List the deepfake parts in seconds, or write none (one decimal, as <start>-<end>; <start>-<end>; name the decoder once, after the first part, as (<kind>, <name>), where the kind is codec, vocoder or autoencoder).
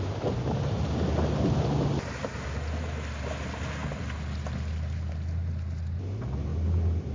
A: none